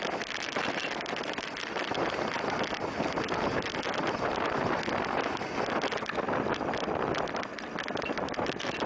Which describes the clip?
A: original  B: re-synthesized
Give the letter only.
A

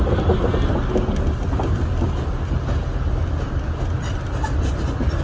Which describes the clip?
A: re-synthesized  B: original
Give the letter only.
B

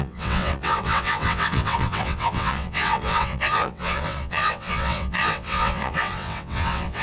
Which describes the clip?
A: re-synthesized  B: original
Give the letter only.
A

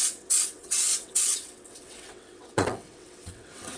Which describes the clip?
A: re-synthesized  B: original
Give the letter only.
A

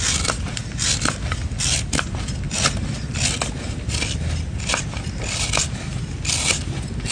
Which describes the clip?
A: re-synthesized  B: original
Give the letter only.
B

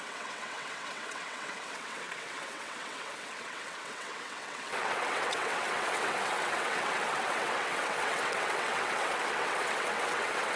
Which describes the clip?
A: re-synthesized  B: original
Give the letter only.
A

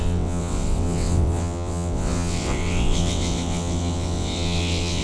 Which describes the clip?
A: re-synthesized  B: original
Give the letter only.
A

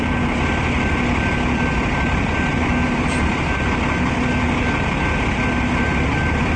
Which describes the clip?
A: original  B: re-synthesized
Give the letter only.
A